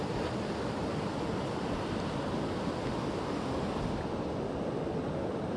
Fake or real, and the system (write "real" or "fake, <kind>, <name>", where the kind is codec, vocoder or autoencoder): real